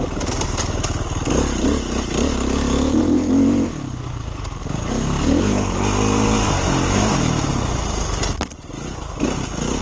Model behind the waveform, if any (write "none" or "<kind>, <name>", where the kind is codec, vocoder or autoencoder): none